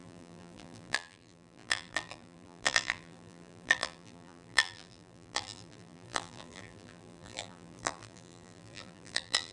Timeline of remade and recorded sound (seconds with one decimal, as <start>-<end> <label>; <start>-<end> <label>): 0.0-9.5 remade